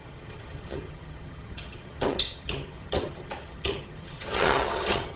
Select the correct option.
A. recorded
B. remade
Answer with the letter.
B